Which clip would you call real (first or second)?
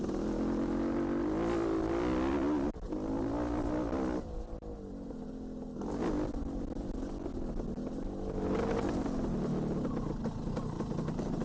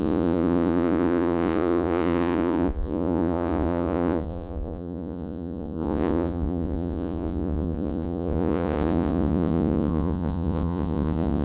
first